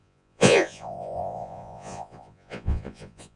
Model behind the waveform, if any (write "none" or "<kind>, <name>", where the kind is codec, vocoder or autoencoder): vocoder, Vocos